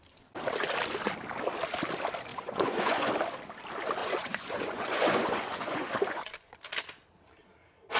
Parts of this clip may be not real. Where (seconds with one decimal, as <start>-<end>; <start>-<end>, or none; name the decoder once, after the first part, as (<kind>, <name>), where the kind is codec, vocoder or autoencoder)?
2.3-3.1 (vocoder, Vocos); 4.0-6.6